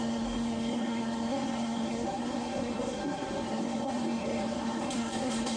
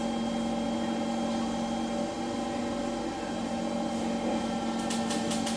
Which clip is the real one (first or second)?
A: second